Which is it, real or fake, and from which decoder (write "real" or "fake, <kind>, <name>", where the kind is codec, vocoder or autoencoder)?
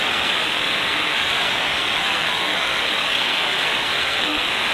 fake, codec, SNAC